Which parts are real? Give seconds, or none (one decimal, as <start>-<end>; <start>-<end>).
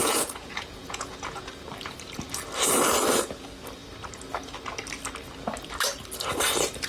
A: 1.5-6.9